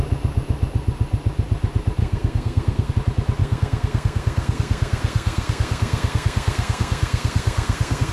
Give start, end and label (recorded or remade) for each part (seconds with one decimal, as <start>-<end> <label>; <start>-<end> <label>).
0.0-2.0 recorded; 2.0-2.9 remade; 2.9-3.4 recorded; 3.4-8.1 remade